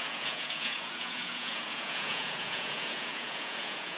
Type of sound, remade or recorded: remade